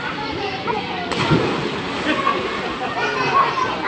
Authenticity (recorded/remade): recorded